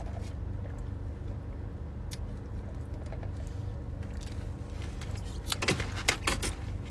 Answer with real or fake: real